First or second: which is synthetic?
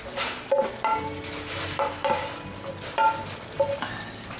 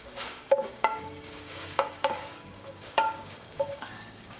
second